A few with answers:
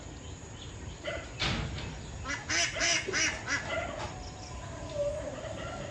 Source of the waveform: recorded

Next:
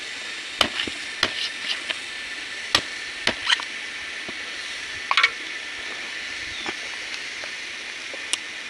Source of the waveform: recorded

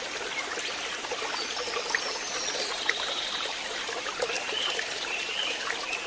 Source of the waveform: recorded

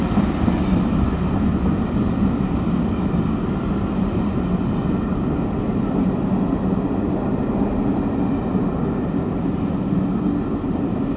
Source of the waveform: recorded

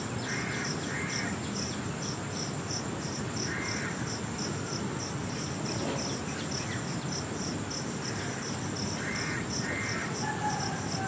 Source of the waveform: recorded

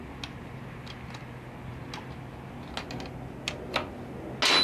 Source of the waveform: recorded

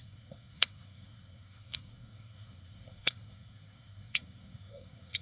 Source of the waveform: remade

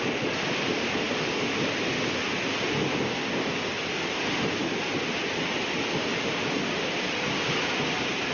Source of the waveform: recorded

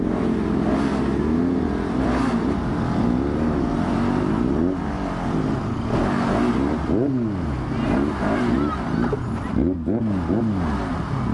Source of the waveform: recorded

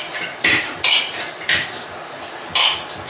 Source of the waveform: recorded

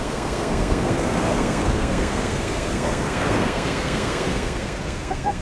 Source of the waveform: remade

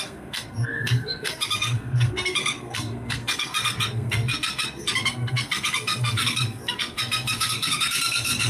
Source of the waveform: remade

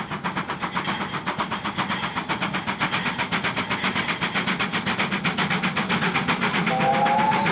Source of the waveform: recorded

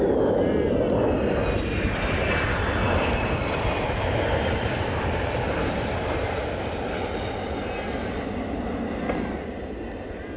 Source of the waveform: recorded